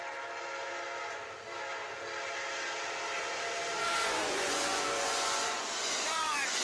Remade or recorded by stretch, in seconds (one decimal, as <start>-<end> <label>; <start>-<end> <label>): 0.0-3.8 recorded; 3.8-6.6 remade